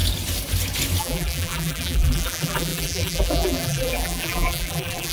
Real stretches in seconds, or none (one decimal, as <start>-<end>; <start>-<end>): 0.0-1.0

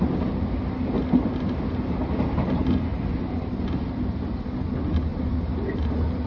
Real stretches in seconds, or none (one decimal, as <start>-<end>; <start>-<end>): 0.0-2.9; 3.6-5.1

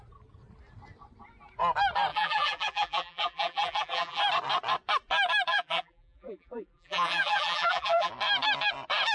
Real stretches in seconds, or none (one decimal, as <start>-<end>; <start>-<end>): 0.0-2.1; 4.2-5.5; 8.1-9.1